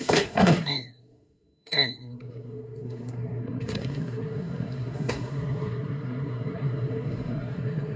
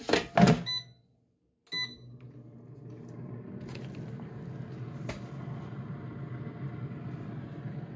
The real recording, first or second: second